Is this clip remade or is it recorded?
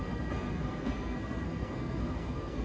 remade